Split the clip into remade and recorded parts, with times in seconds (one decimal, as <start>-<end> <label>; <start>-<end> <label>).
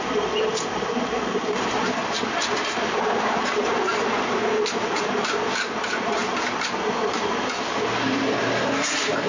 0.0-9.3 remade